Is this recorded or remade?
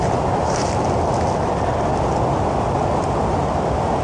recorded